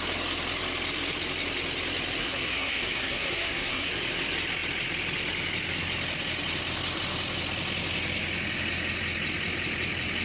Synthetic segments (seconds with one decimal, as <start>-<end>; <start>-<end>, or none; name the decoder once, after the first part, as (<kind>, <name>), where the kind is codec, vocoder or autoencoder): 2.2-3.9 (codec, SNAC)